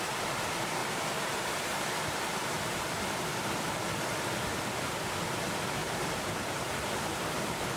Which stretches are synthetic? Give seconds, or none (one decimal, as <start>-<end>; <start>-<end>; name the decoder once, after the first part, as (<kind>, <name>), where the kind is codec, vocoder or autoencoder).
0.8-3.8 (vocoder, BigVGAN v2); 5.8-6.9